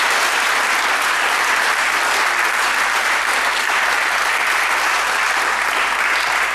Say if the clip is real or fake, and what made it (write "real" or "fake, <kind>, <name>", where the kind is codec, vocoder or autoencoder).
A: real